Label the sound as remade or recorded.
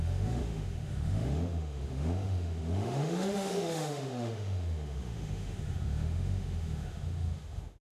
remade